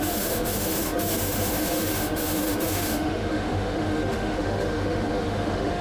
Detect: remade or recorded remade